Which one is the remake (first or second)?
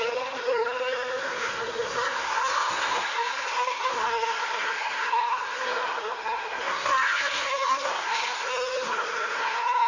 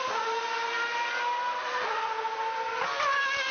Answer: first